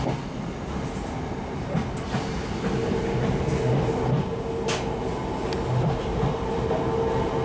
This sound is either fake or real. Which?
real